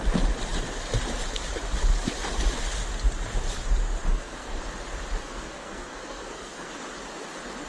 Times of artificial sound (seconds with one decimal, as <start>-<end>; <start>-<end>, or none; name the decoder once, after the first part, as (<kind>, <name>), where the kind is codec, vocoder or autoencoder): 4.1-4.6 (codec, SNAC); 5.2-6.7